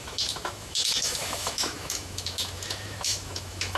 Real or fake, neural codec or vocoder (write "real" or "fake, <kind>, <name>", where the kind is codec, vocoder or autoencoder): fake, autoencoder, DAC-VAE